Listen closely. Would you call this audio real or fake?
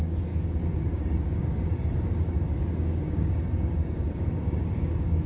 fake